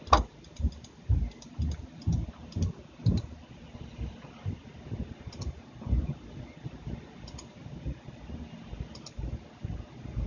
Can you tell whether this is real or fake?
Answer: real